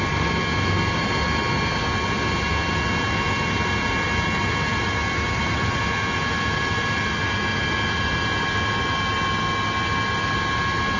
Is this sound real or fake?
real